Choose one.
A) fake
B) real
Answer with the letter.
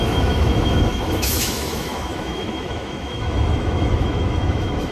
A